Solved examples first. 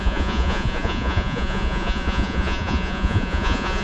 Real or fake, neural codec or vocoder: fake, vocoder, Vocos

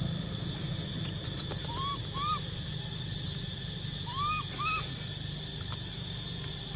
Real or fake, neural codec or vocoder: real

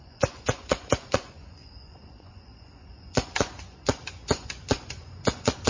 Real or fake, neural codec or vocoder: fake, vocoder, Vocos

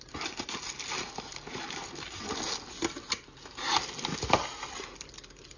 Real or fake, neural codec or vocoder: real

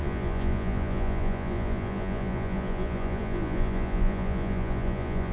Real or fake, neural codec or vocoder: fake, vocoder, Vocos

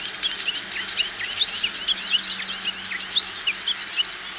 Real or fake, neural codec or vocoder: real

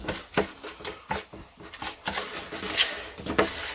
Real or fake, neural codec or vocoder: real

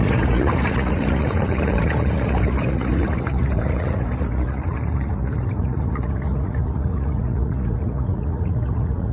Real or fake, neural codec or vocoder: fake, vocoder, Vocos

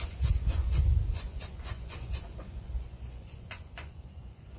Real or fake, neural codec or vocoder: fake, vocoder, Vocos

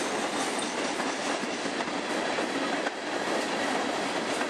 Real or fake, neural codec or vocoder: real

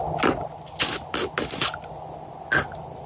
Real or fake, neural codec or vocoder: real